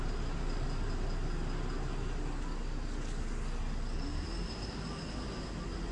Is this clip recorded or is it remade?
recorded